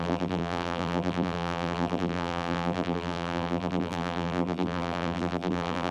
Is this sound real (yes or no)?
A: no